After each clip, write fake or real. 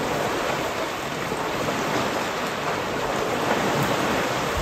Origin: real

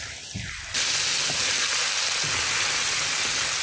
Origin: real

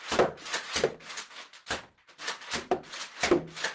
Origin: real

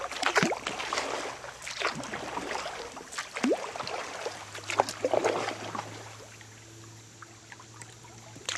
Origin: real